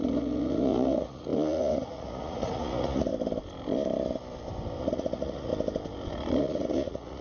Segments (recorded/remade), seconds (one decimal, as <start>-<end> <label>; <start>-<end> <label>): 0.0-3.1 remade; 3.1-4.8 recorded; 4.8-5.5 remade; 5.5-6.1 recorded; 6.1-7.2 remade